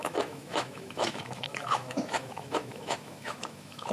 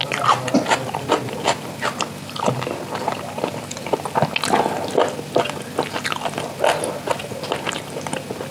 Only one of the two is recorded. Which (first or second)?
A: second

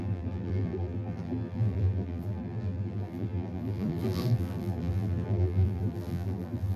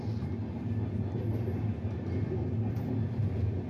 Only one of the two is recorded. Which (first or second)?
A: second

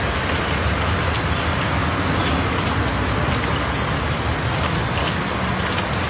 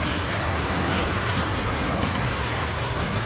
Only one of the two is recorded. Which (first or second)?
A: first